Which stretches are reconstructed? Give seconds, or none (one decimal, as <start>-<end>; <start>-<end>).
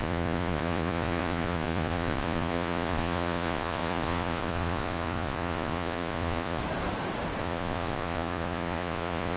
0.0-6.6; 7.4-9.4